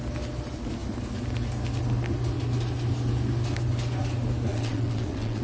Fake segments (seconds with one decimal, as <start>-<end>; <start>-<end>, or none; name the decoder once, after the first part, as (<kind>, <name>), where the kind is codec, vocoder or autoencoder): 4.5-5.4 (vocoder, WaveNeXt)